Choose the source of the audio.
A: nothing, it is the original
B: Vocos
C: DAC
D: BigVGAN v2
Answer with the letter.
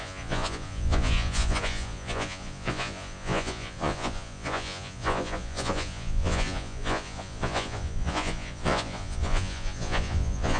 B